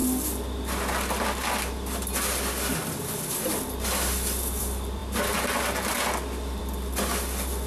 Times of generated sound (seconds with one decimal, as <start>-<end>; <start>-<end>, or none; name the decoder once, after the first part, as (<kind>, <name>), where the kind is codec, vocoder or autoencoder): none